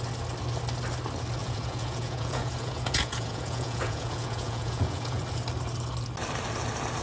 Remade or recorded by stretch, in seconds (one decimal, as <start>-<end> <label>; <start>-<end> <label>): 0.0-1.4 recorded; 1.4-5.2 remade; 5.2-7.0 recorded